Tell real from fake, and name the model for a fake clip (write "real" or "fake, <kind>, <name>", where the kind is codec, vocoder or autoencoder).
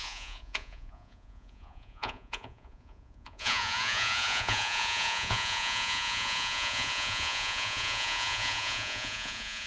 fake, vocoder, Vocos